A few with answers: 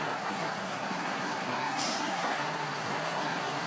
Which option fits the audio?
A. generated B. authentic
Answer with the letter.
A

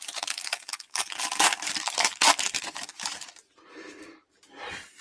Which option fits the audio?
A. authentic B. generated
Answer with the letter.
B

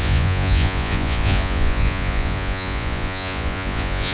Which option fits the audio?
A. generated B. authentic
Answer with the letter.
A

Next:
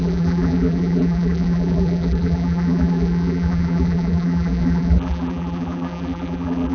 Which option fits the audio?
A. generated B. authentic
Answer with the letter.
A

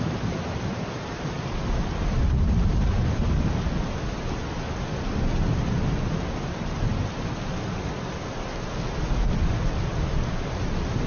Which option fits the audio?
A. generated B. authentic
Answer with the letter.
B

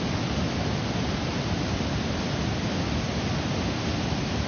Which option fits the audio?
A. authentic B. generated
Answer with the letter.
A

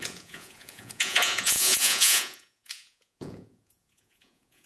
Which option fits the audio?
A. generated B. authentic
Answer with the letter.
A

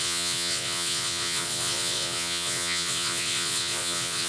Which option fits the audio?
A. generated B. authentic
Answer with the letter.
A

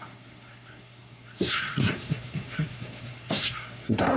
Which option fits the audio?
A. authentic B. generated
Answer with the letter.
B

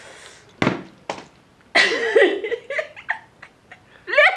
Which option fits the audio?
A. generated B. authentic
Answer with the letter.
B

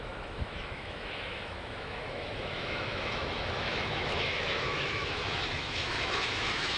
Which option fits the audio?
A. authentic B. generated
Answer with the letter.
B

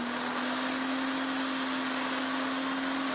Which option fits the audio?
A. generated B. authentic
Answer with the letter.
B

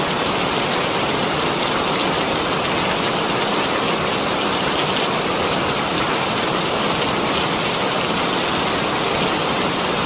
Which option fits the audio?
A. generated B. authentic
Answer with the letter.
B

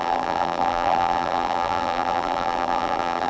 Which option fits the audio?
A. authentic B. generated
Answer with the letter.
B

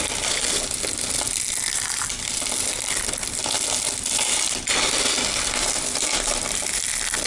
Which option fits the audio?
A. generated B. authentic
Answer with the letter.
B